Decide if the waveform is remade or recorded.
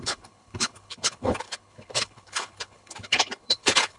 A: remade